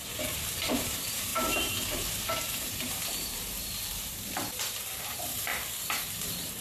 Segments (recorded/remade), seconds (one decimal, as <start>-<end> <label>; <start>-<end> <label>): 0.0-6.6 remade